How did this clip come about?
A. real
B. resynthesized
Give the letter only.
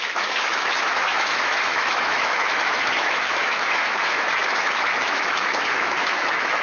B